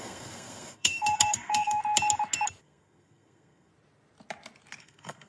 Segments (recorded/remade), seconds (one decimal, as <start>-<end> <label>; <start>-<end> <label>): 0.0-1.8 remade; 1.8-2.6 recorded; 2.6-3.7 remade; 3.7-4.8 recorded; 4.8-5.3 remade